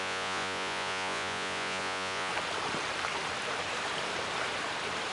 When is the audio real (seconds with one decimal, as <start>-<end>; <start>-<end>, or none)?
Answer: 2.3-5.1